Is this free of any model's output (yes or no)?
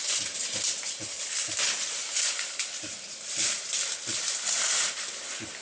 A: yes